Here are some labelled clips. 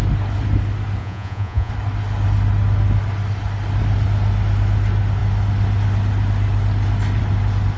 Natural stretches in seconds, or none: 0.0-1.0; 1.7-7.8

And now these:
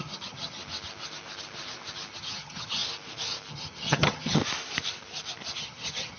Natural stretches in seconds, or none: 0.6-2.1; 2.8-3.5; 4.4-5.6

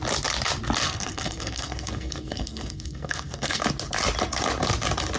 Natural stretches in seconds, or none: 0.0-0.8; 3.6-5.2

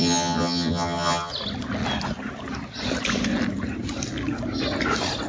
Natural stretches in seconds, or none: 1.3-5.3

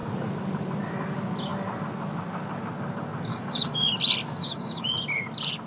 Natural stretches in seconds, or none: 0.0-3.3; 3.9-4.4; 4.9-5.7

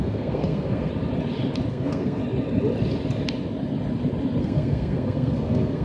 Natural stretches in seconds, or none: 0.9-1.7; 2.2-4.4

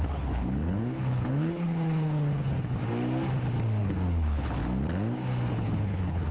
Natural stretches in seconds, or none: 2.8-3.8; 4.6-5.5